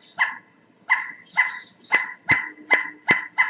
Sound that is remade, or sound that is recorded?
recorded